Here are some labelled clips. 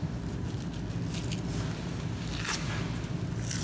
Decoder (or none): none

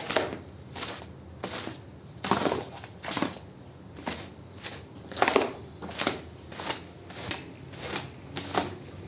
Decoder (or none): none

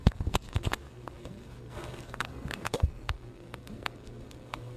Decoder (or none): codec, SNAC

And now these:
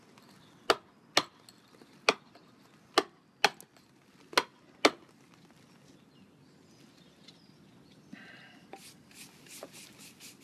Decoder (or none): none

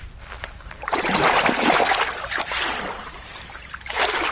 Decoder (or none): vocoder, BigVGAN v2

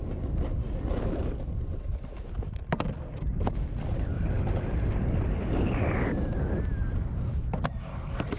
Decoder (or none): none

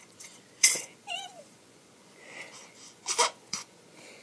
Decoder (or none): vocoder, Vocos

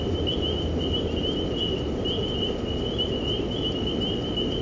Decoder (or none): none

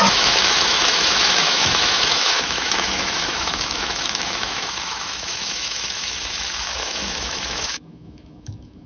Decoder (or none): autoencoder, DAC-VAE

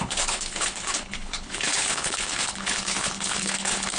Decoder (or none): codec, HILCodec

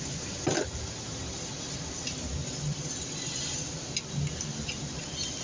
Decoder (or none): none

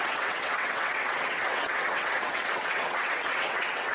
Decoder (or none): vocoder, WaveNeXt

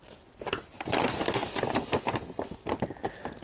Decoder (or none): none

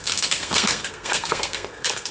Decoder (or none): codec, SNAC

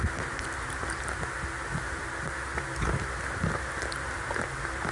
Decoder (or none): none